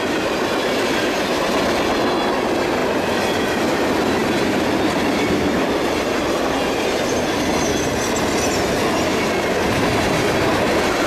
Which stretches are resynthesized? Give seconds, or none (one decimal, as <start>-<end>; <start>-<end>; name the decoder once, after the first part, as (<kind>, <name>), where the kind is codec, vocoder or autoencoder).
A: none